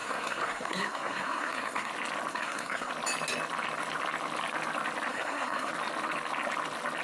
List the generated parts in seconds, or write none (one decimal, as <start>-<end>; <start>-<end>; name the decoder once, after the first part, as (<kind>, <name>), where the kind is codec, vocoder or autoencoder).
0.0-1.9 (codec, SNAC); 2.3-2.9; 5.1-5.7